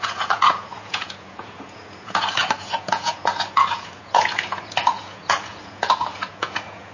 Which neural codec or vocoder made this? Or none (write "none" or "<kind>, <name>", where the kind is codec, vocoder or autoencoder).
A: vocoder, Vocos